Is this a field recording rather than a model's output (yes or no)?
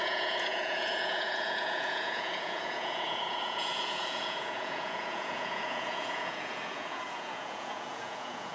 no